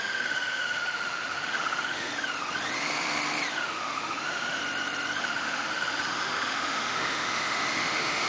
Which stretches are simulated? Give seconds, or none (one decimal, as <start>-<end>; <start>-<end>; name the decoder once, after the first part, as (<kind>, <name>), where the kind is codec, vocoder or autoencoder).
0.0-2.1 (autoencoder, DAC-VAE); 3.5-4.6; 5.2-8.3